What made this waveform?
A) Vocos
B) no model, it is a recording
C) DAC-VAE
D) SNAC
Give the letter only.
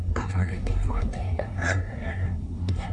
D